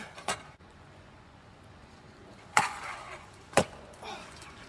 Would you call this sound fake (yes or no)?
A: yes